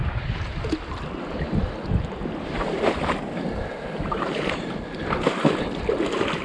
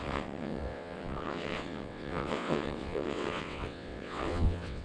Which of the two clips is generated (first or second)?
second